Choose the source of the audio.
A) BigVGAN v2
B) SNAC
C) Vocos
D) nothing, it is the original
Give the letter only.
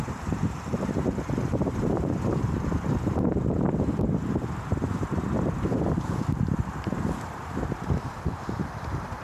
A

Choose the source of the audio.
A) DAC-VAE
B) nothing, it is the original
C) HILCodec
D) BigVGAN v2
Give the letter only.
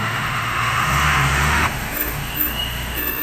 A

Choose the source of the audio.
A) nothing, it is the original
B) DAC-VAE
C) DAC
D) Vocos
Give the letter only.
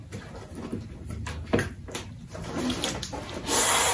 A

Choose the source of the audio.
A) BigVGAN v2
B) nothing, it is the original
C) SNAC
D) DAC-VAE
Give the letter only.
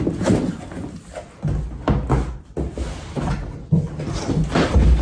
B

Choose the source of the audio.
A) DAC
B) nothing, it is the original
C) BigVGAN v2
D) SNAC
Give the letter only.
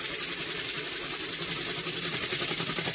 B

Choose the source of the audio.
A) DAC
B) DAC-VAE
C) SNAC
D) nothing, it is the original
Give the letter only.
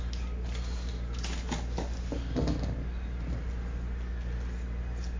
D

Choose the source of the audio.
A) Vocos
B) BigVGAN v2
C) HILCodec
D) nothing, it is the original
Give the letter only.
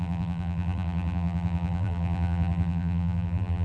B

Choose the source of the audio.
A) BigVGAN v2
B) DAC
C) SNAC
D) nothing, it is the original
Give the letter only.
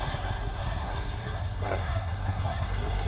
C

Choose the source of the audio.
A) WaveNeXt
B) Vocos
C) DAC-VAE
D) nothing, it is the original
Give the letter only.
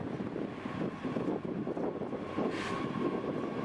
D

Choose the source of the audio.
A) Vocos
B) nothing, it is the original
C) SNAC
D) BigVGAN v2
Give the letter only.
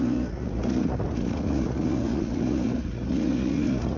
A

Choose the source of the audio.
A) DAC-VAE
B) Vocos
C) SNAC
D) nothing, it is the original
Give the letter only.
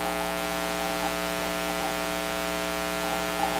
D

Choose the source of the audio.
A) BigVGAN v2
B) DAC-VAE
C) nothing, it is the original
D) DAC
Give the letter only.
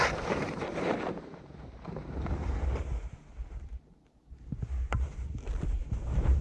A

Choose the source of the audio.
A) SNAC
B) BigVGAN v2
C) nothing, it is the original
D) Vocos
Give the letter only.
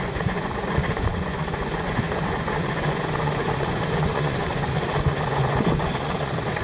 D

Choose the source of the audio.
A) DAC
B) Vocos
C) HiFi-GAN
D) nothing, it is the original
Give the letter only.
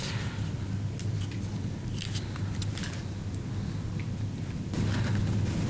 D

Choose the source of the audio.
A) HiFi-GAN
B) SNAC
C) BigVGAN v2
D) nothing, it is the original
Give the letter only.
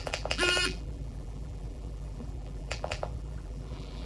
C